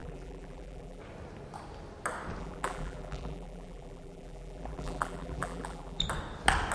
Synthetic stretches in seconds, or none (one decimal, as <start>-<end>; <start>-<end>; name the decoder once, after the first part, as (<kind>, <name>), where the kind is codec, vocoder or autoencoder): 0.0-1.0 (vocoder, BigVGAN v2); 2.4-6.0